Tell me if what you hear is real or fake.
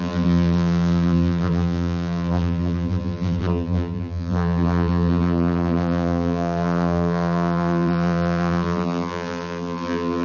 fake